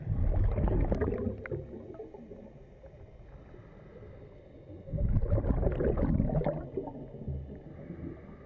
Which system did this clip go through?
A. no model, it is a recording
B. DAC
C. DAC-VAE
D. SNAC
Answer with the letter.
A